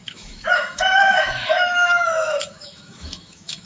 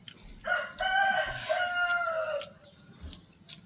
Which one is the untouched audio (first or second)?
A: second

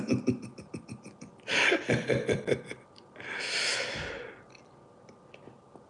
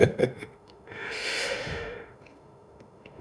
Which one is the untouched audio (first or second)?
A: first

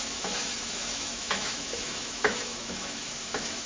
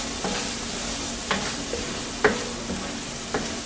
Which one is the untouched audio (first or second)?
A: second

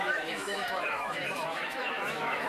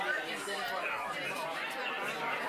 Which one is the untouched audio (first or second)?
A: second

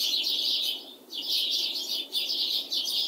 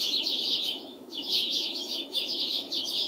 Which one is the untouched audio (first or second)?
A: first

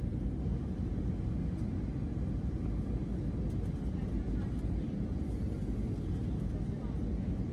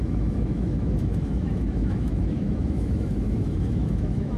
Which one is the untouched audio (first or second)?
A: first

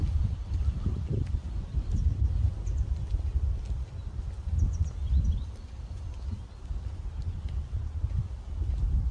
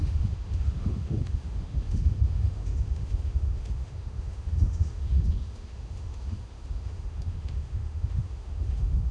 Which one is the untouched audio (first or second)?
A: first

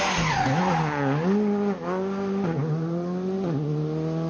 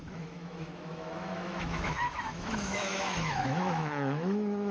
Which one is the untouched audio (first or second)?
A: first